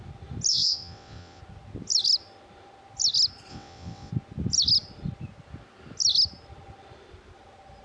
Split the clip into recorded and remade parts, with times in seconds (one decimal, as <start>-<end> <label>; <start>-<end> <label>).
0.0-0.5 recorded; 0.5-1.4 remade; 1.4-3.5 recorded; 3.5-4.1 remade; 4.1-7.8 recorded

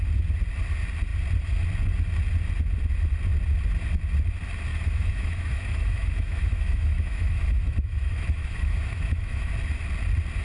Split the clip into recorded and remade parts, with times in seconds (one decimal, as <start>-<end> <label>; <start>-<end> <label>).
0.0-4.7 recorded; 4.7-9.5 remade; 9.5-10.4 recorded

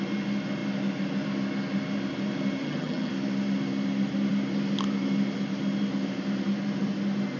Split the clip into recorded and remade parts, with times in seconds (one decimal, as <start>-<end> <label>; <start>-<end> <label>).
0.0-2.6 recorded; 2.6-3.1 remade; 3.1-7.4 recorded

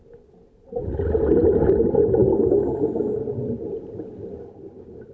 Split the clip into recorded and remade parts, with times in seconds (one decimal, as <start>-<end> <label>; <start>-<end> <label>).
0.0-5.1 recorded